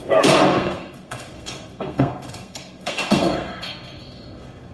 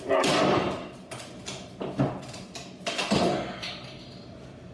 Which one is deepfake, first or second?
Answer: first